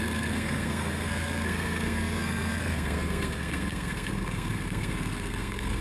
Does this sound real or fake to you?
fake